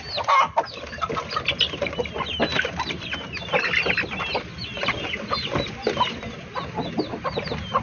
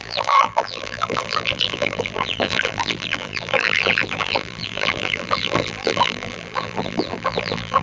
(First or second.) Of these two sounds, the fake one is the second